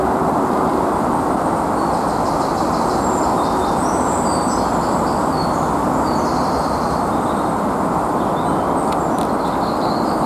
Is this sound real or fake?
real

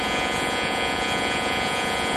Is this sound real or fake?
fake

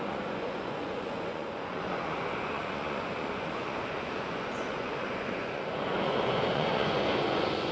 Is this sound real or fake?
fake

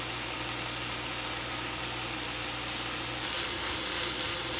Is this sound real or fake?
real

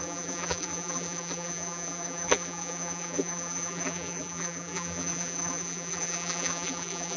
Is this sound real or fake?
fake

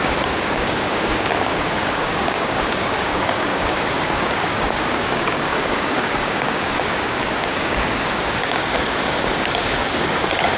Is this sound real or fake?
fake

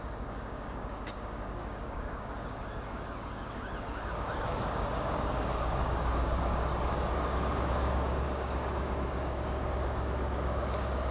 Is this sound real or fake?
fake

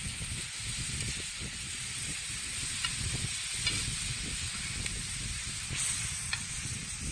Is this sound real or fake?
real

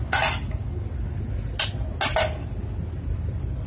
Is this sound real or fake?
real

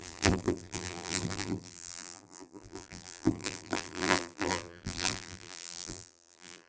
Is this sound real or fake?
fake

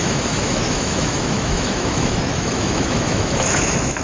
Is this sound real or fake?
fake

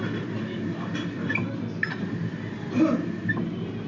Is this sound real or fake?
real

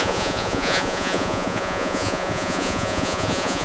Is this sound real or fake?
fake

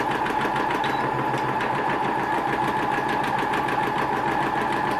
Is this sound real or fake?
real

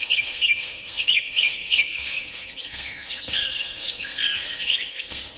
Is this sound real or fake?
fake